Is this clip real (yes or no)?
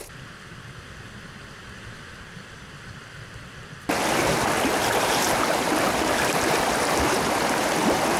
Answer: yes